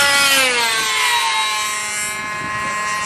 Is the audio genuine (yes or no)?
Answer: yes